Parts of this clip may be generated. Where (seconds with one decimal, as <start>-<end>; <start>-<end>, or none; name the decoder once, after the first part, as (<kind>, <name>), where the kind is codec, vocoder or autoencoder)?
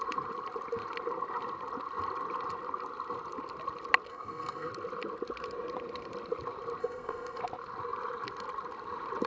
4.1-4.7 (codec, SNAC); 6.8-7.4